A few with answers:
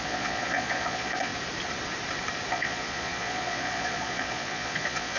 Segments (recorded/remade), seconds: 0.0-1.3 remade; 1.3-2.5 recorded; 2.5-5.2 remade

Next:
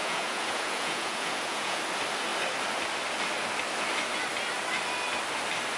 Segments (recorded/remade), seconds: 0.0-1.8 remade; 1.8-5.8 recorded

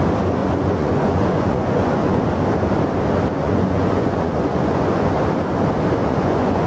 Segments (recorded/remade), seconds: 0.0-0.4 recorded; 0.4-2.2 remade; 2.2-3.3 recorded; 3.3-5.1 remade; 5.1-6.0 recorded; 6.0-6.7 remade

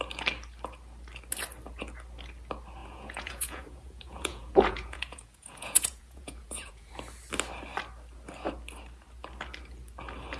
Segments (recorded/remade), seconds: 0.0-2.8 recorded; 2.8-6.9 remade; 6.9-10.4 recorded

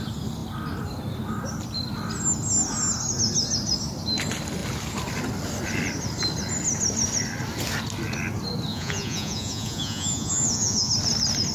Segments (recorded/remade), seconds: 0.0-8.7 recorded; 8.7-10.9 remade; 10.9-11.5 recorded